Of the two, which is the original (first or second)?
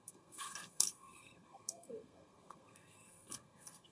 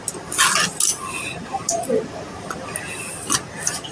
second